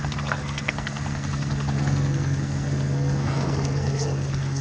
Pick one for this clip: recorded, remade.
remade